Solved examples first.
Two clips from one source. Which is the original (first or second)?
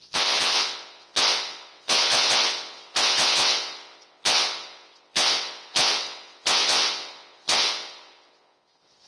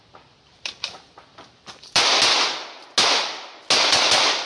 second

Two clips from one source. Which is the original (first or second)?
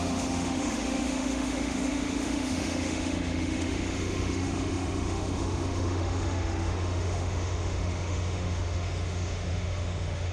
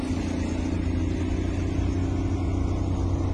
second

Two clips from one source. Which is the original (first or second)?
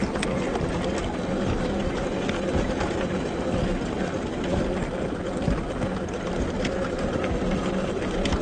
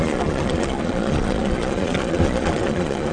first